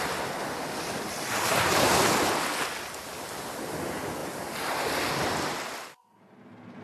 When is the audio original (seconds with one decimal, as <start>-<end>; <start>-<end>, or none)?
0.0-4.2; 5.1-6.8